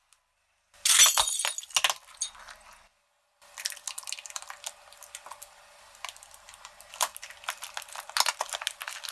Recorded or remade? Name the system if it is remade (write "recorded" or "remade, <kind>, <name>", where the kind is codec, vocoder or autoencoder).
recorded